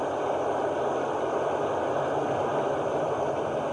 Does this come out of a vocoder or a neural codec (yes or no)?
yes